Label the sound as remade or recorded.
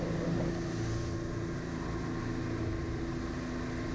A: recorded